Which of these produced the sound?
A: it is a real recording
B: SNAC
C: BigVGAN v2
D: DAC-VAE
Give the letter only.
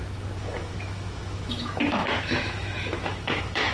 D